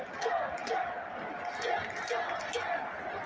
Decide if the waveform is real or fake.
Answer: real